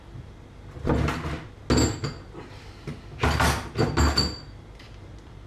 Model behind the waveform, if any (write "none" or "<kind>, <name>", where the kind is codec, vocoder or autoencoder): none